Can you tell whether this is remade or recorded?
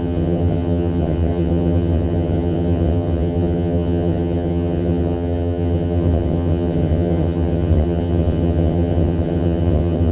remade